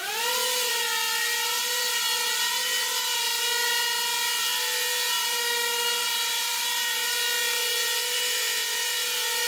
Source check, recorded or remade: recorded